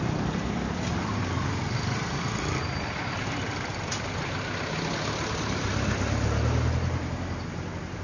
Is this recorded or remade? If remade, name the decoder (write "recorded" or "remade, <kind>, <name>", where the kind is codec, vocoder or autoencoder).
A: recorded